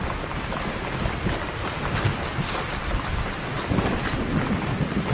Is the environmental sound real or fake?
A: real